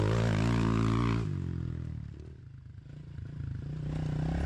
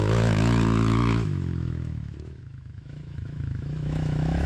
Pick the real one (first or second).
first